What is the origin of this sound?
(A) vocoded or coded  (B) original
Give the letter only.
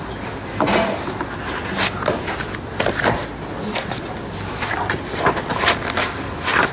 B